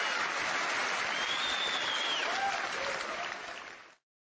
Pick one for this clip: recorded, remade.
recorded